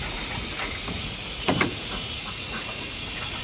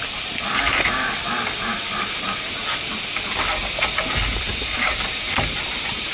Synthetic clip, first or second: first